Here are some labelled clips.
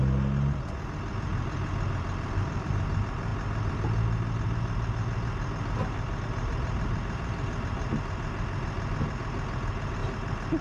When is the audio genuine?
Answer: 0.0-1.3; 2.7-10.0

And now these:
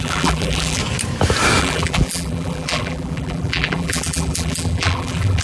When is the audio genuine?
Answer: 0.8-1.6

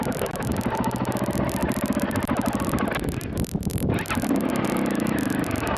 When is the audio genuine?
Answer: 0.0-3.7; 4.5-5.8

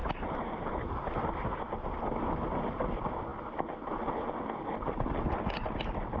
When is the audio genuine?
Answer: 1.0-6.2

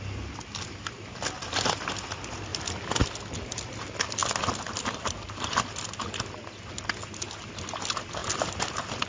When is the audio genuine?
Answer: 0.0-2.5; 3.7-8.2